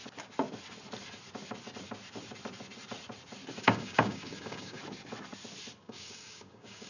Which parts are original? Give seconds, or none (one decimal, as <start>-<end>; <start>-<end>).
0.0-3.6; 4.8-5.8